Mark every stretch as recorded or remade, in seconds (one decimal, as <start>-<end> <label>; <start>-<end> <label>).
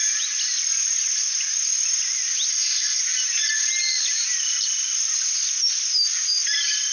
0.0-2.5 recorded; 2.5-3.0 remade; 3.0-6.9 recorded